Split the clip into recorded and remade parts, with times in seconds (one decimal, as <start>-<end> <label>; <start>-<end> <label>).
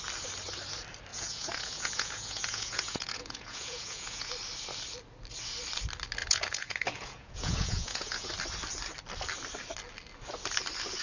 0.0-1.1 recorded; 1.1-4.3 remade; 4.3-6.2 recorded; 6.2-8.3 remade; 8.3-11.0 recorded